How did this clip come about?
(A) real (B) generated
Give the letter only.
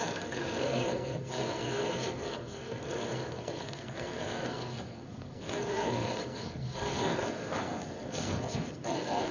B